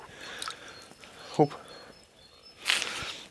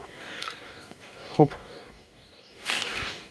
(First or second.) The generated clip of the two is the second